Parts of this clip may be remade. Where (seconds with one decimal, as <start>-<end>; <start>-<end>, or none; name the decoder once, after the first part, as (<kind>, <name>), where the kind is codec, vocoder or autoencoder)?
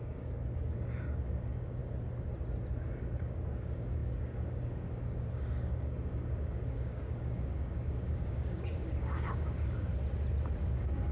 0.0-1.8 (codec, DAC); 3.1-9.9; 10.6-11.1